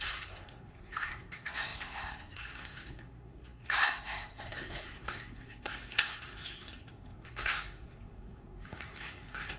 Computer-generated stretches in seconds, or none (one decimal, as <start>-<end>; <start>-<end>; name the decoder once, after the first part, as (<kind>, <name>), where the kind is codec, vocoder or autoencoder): 0.0-9.6 (codec, SNAC)